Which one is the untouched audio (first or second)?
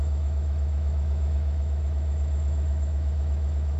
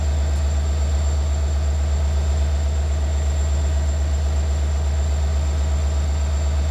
second